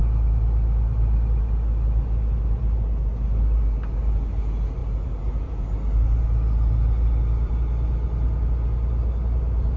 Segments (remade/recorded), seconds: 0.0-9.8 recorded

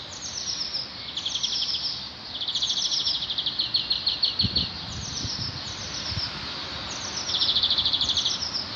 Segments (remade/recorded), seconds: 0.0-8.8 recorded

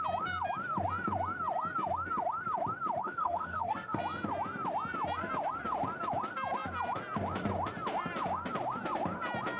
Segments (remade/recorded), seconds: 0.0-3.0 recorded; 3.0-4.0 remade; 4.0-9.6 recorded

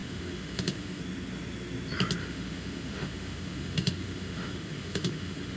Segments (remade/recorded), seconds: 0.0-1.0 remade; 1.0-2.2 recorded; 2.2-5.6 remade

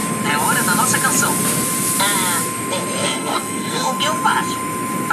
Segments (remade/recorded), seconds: 0.0-3.0 recorded; 3.0-4.0 remade; 4.0-5.1 recorded

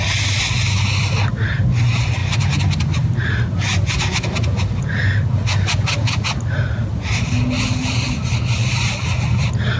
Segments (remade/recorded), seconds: 0.0-9.8 recorded

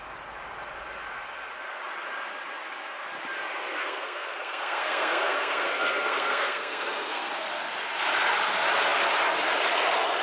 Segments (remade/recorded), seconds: 0.0-3.8 recorded; 3.8-7.3 remade; 7.3-10.2 recorded

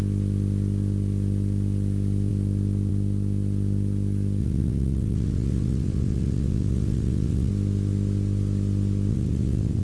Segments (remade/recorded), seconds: 0.0-4.4 recorded; 4.4-7.5 remade; 7.5-9.1 recorded; 9.1-9.8 remade